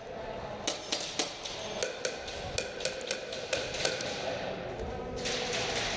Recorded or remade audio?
recorded